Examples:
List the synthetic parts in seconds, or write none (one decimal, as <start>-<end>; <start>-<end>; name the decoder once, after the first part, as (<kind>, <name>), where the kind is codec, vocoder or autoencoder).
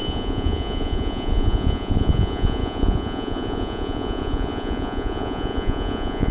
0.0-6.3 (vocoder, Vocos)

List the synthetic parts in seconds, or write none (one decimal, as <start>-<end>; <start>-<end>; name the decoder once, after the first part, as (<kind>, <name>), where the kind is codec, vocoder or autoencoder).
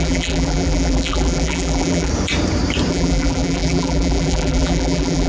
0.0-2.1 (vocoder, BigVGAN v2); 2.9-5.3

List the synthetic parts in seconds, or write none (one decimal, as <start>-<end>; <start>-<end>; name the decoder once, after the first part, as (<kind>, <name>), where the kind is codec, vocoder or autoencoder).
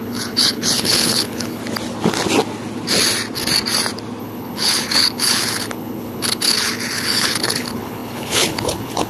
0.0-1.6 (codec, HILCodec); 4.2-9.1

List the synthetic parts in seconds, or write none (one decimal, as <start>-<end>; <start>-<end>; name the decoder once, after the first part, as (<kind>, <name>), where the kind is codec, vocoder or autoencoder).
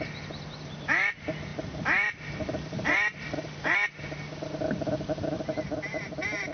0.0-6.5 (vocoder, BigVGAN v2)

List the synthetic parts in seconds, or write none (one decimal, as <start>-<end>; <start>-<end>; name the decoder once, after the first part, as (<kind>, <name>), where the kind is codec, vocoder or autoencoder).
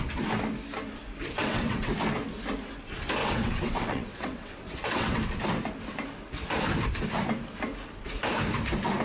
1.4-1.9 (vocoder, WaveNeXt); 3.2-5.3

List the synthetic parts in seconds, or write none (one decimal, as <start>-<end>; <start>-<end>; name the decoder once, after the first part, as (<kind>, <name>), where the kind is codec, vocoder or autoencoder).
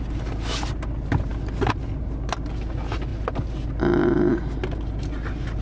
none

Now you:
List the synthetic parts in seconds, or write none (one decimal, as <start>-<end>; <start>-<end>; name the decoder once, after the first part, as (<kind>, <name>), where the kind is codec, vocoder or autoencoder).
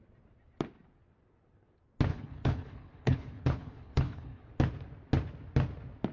2.1-4.5 (codec, HILCodec)